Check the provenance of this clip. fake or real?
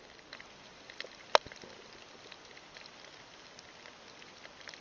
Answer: real